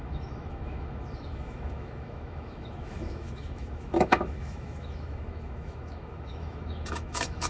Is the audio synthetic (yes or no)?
yes